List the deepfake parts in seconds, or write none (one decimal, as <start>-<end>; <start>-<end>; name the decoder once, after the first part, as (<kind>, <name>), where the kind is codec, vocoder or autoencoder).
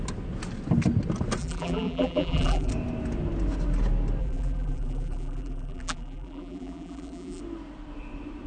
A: 1.4-2.7 (vocoder, BigVGAN v2); 4.2-7.4